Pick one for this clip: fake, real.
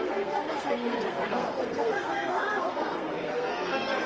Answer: fake